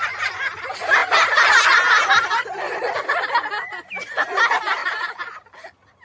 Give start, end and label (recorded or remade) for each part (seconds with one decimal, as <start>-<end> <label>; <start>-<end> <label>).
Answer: 0.0-4.8 recorded; 4.8-5.5 remade; 5.5-6.0 recorded